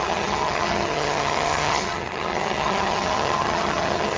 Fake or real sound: fake